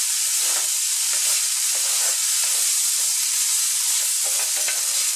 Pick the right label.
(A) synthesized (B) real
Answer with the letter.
B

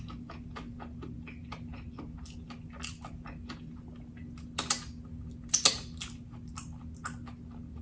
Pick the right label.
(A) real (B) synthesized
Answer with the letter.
A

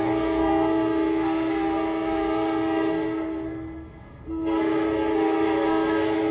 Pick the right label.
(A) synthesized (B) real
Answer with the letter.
A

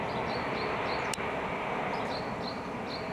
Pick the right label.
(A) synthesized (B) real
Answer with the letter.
B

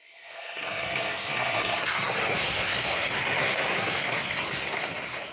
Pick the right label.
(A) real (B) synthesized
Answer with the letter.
B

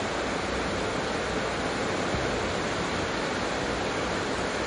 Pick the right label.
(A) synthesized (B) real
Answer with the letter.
B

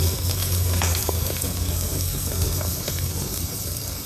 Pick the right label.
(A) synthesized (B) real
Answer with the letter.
A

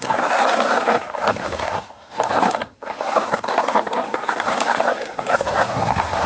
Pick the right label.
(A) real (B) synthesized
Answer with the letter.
B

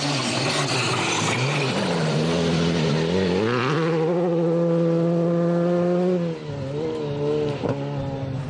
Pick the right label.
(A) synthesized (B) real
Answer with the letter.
B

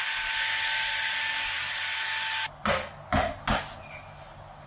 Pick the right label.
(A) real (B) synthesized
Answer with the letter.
A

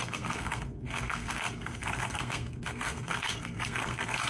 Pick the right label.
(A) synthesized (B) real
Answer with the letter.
A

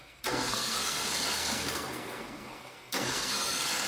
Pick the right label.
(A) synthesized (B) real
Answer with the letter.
A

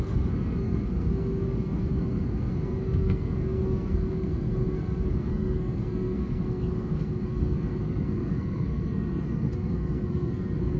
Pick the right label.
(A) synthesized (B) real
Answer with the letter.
A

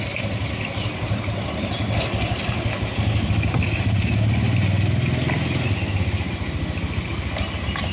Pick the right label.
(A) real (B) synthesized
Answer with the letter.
A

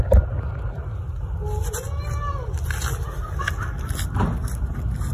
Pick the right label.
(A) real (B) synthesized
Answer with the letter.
A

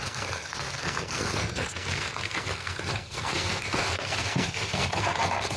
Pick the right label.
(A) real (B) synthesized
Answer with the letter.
B